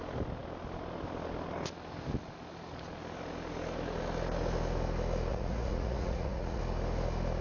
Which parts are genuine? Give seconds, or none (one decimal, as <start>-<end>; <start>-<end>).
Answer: 0.0-5.3; 6.6-7.4